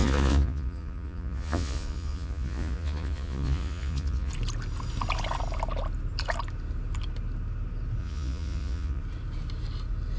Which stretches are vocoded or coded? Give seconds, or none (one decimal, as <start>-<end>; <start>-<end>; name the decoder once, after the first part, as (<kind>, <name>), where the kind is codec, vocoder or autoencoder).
0.0-4.3 (vocoder, Vocos); 8.0-9.0